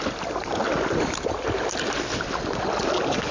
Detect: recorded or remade recorded